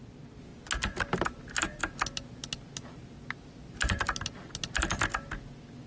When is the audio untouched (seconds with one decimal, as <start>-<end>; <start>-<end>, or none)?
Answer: 0.0-5.9